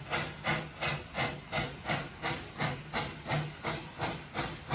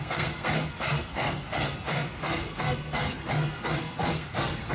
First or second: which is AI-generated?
second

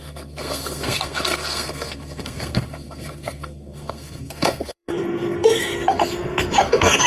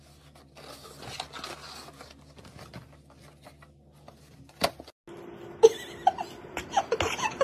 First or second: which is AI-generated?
first